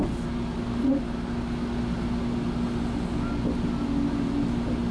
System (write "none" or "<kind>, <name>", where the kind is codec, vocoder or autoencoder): none